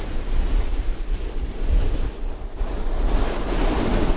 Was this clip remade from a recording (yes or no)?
no